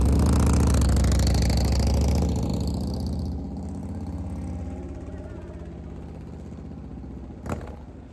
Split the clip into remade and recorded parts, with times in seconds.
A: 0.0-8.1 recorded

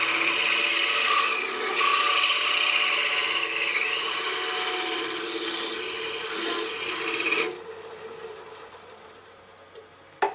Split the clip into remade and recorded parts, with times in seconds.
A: 0.0-10.3 recorded

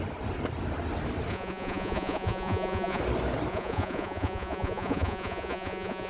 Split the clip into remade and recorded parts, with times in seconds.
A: 0.0-1.3 recorded; 1.3-3.0 remade; 3.0-3.5 recorded; 3.5-6.1 remade

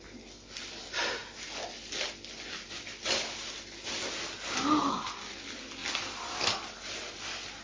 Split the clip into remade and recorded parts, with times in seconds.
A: 0.0-7.6 recorded

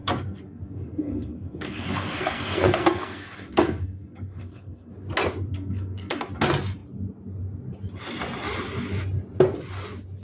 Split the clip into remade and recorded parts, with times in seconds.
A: 0.0-4.9 remade; 4.9-5.5 recorded; 5.5-6.2 remade; 6.2-10.2 recorded

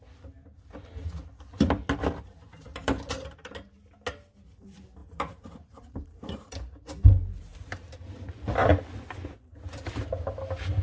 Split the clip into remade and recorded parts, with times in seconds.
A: 0.0-2.7 recorded; 2.7-3.8 remade; 3.8-5.0 recorded; 5.0-6.9 remade; 6.9-7.5 recorded; 7.5-8.1 remade; 8.1-10.8 recorded